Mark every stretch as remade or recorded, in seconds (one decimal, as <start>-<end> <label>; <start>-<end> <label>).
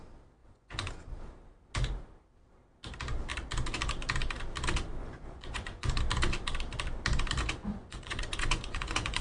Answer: 0.0-0.4 recorded; 0.4-0.9 remade; 0.9-5.0 recorded; 5.0-6.0 remade; 6.0-7.6 recorded; 7.6-9.2 remade